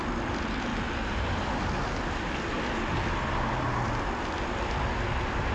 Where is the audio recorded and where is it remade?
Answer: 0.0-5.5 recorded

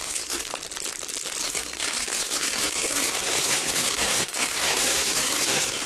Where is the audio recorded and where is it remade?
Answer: 0.0-0.5 remade; 0.5-1.4 recorded; 1.4-5.9 remade

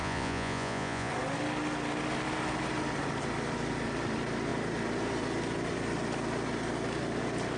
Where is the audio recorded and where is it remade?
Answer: 0.0-1.1 remade; 1.1-7.6 recorded

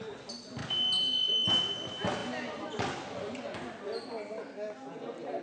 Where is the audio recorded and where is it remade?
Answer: 0.0-5.4 recorded